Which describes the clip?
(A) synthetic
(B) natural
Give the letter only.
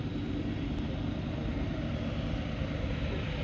B